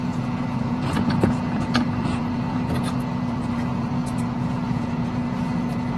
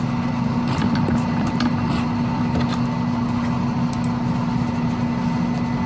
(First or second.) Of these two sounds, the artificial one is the first